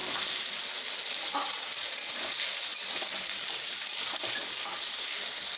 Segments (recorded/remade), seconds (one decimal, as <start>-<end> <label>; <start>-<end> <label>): 0.0-5.6 recorded

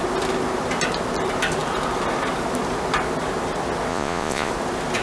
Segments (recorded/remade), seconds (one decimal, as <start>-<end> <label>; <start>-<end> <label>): 0.0-3.9 recorded; 3.9-4.5 remade; 4.5-5.0 recorded

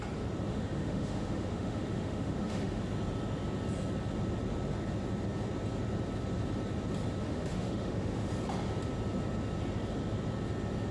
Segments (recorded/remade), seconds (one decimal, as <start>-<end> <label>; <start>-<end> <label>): 0.0-0.5 recorded; 0.5-2.8 remade; 2.8-7.2 recorded; 7.2-8.3 remade; 8.3-10.9 recorded

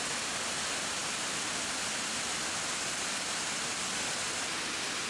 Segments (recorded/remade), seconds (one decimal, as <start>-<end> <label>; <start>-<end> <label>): 0.0-5.1 recorded

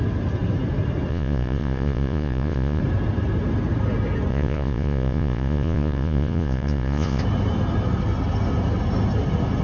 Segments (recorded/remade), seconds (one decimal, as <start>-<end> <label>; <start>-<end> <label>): 0.0-1.1 recorded; 1.1-2.8 remade; 2.8-4.3 recorded; 4.3-7.2 remade; 7.2-9.6 recorded

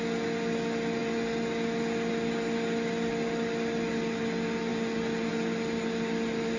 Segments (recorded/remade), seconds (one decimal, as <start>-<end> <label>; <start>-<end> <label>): 0.0-6.6 recorded